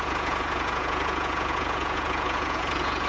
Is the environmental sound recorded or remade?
remade